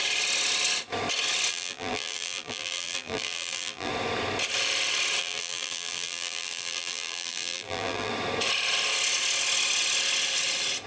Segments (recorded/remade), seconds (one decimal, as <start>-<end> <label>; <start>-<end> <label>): 0.0-1.5 recorded; 1.5-3.9 remade; 3.9-5.2 recorded; 5.2-8.1 remade; 8.1-10.9 recorded